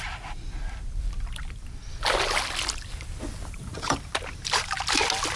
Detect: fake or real real